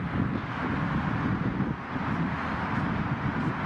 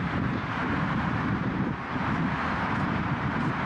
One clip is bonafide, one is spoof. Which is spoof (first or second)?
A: second